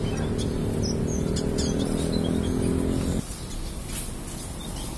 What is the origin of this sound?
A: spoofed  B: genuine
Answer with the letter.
B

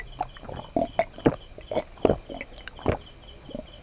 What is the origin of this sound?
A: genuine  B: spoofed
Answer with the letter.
A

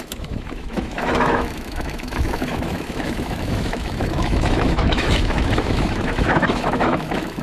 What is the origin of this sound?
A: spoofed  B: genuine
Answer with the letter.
A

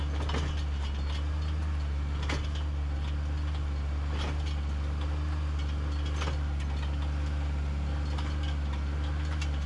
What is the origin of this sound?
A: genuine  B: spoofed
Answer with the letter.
A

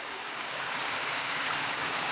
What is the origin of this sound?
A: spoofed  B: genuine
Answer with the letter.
A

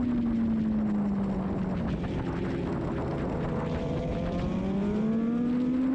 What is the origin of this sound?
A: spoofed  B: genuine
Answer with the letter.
B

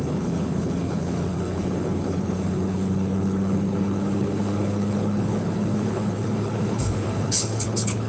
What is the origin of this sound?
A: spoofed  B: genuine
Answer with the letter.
A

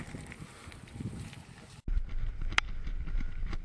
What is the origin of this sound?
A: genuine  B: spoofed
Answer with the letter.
A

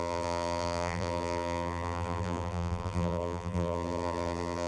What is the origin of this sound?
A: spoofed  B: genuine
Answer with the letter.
A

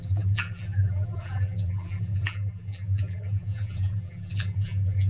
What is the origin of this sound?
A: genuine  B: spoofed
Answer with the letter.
B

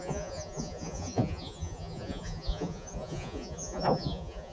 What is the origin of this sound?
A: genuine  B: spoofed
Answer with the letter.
B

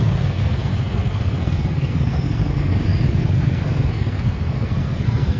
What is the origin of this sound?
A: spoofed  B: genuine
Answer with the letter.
A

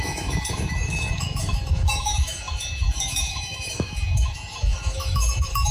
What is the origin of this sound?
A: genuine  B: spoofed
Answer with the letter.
B